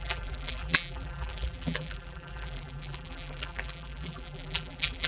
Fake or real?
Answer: fake